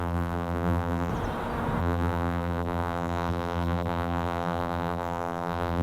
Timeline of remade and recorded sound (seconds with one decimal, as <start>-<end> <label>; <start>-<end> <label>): 0.0-1.1 remade; 1.1-1.8 recorded; 1.8-5.8 remade